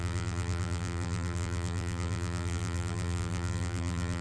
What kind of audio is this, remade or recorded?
remade